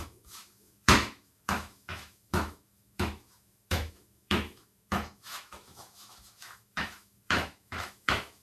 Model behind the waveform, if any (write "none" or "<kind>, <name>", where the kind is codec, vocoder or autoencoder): autoencoder, DAC-VAE